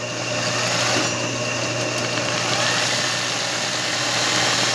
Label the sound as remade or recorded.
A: recorded